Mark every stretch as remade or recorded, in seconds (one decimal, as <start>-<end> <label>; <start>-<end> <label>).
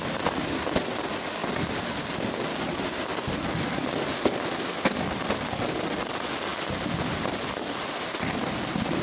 0.0-9.0 recorded